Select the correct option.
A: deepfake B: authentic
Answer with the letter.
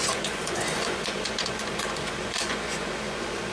A